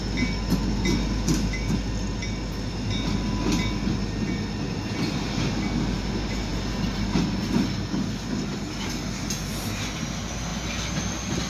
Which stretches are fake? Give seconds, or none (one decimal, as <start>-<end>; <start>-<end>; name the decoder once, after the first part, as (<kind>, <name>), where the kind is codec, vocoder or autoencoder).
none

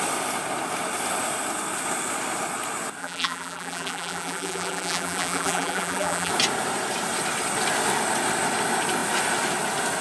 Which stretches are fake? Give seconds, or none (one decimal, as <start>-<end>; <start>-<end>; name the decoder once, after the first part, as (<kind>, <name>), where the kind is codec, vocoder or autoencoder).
3.0-6.3 (vocoder, BigVGAN v2)

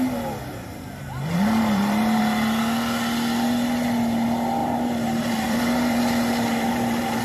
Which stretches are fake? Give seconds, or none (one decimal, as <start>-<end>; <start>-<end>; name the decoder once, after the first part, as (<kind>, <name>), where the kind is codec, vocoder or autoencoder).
0.5-2.2 (vocoder, BigVGAN v2); 4.6-7.2